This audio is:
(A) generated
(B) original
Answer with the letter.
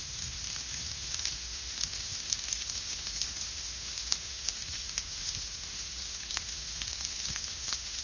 A